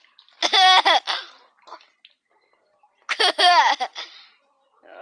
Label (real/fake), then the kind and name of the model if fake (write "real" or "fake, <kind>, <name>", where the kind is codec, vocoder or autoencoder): real